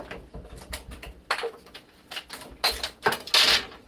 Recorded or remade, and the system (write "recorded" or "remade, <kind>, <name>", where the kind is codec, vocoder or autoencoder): recorded